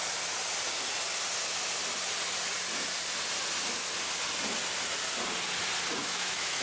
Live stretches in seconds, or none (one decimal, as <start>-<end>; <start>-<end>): 0.0-6.0